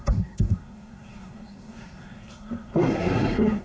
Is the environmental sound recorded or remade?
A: remade